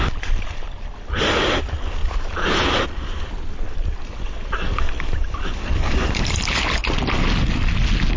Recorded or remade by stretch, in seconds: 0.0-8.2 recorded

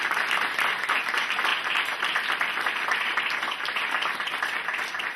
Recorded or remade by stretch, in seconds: 0.0-5.2 recorded

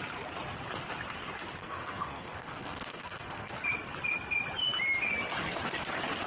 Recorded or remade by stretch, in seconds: 0.0-1.6 recorded; 1.6-3.5 remade; 3.5-6.3 recorded

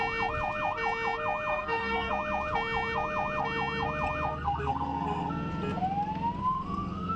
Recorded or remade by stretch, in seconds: 0.0-1.5 recorded; 1.5-2.1 remade; 2.1-4.3 recorded; 4.3-5.5 remade; 5.5-6.4 recorded; 6.4-7.2 remade

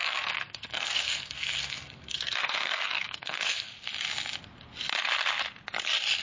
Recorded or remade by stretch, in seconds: 0.0-3.7 remade; 3.7-6.2 recorded

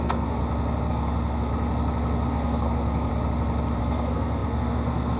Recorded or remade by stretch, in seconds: 0.0-0.4 remade; 0.4-0.9 recorded; 0.9-1.5 remade; 1.5-2.3 recorded; 2.3-3.1 remade; 3.1-3.8 recorded; 3.8-5.2 remade

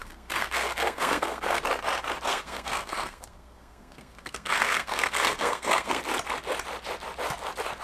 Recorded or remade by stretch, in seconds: 0.0-1.6 remade; 1.6-2.3 recorded; 2.3-6.0 remade; 6.0-7.8 recorded